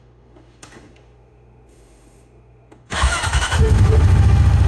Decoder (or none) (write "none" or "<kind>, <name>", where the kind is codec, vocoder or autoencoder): autoencoder, DAC-VAE